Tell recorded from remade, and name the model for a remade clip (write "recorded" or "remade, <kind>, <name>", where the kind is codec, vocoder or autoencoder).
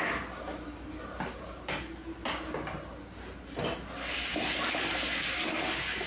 recorded